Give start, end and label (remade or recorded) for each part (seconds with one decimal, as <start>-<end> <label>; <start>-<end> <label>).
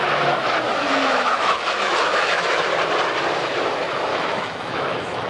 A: 0.0-0.8 recorded; 0.8-2.6 remade; 2.6-4.1 recorded; 4.1-5.3 remade